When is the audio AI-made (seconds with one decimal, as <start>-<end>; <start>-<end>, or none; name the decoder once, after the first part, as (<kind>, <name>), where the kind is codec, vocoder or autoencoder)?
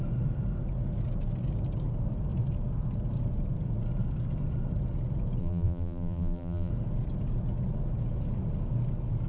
5.4-6.7 (vocoder, BigVGAN v2)